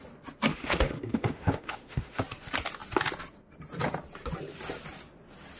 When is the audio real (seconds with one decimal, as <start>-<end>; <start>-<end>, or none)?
0.0-0.5; 2.2-5.6